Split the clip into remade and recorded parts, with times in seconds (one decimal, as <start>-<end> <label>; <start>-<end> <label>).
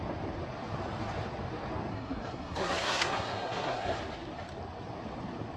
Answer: 0.0-1.9 recorded; 1.9-4.0 remade; 4.0-5.6 recorded